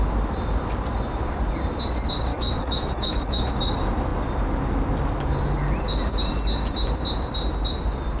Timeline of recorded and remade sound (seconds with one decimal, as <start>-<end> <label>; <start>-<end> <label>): 0.0-2.3 recorded; 2.3-3.5 remade; 3.5-8.2 recorded